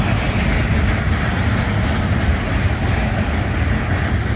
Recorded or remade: recorded